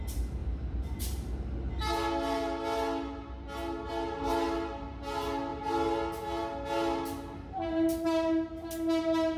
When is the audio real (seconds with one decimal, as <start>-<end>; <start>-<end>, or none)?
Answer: 0.0-9.4